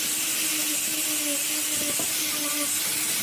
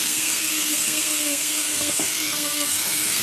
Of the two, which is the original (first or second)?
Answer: first